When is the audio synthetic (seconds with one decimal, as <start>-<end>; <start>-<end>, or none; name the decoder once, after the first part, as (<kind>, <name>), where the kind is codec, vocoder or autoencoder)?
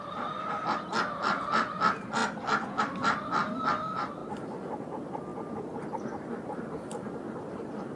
0.0-2.2 (vocoder, BigVGAN v2); 2.8-4.2; 4.7-8.0